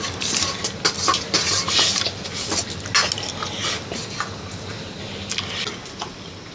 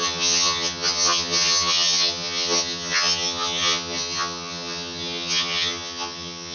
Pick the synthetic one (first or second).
second